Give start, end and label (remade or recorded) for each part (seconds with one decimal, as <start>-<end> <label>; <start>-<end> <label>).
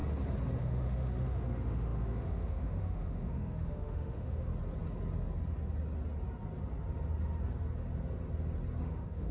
0.0-0.6 recorded; 0.6-4.5 remade; 4.5-8.8 recorded; 8.8-9.3 remade